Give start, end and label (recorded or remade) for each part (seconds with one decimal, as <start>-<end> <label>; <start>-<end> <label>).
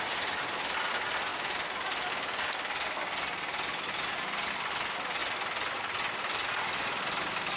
0.0-7.6 recorded